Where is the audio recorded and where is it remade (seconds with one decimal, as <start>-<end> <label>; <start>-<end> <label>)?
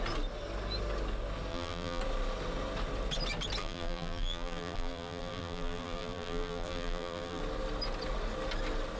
0.0-1.5 recorded; 1.5-2.0 remade; 2.0-3.6 recorded; 3.6-7.4 remade; 7.4-9.0 recorded